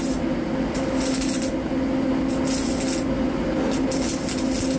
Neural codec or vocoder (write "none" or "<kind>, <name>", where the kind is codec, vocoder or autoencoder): none